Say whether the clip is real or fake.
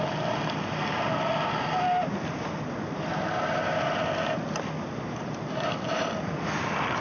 real